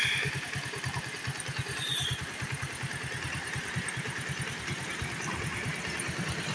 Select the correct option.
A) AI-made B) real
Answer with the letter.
B